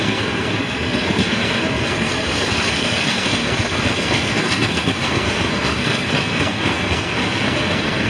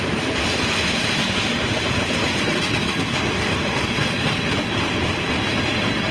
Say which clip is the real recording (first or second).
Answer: second